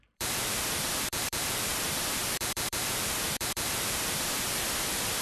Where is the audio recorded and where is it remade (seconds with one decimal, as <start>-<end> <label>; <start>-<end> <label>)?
0.0-5.2 remade